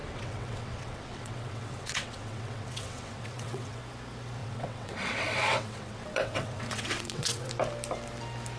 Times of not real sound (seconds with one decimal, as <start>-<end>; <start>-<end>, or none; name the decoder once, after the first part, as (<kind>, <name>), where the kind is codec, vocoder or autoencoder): 0.0-3.8 (vocoder, WaveNeXt); 4.4-7.5

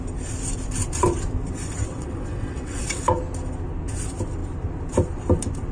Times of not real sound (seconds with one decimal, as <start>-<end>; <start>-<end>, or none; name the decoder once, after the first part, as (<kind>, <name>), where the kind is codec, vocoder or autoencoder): 1.8-3.0 (vocoder, WaveNeXt)